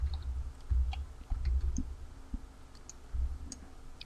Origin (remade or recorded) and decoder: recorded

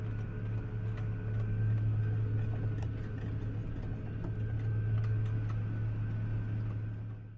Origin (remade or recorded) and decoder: recorded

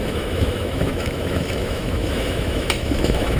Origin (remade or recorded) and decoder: remade, autoencoder, DAC-VAE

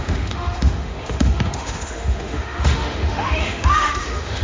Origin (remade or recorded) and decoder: remade, autoencoder, DAC-VAE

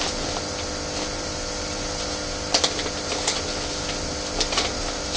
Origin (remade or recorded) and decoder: recorded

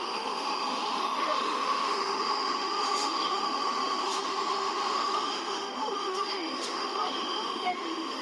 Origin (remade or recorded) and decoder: remade, autoencoder, DAC-VAE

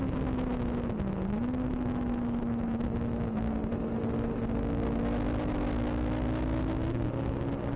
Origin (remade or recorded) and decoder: recorded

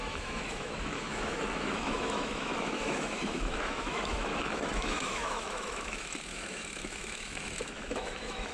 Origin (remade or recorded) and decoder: remade, autoencoder, DAC-VAE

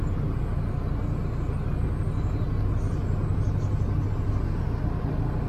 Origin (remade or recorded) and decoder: recorded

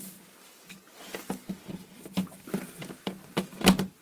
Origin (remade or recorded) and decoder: recorded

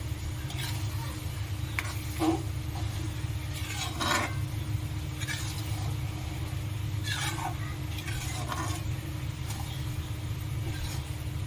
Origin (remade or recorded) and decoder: recorded